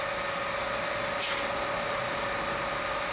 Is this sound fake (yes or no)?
no